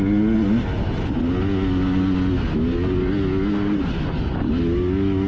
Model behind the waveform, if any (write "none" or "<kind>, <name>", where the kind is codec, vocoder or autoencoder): none